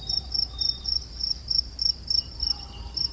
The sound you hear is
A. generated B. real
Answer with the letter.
A